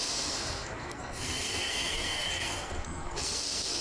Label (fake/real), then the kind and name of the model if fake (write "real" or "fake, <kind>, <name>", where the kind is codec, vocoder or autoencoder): fake, codec, SNAC